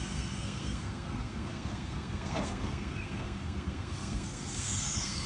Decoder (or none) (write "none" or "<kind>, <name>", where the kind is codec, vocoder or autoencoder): codec, SNAC